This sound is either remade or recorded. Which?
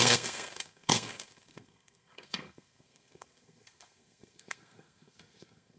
remade